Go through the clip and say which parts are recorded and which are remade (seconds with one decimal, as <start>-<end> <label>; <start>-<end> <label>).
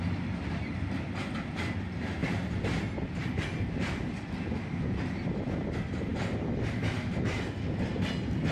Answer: 0.0-0.7 recorded; 0.7-1.7 remade; 1.7-2.2 recorded; 2.2-4.5 remade; 4.5-8.5 recorded